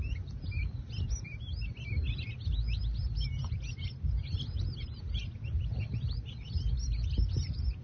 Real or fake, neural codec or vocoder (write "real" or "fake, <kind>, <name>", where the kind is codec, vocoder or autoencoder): fake, vocoder, BigVGAN v2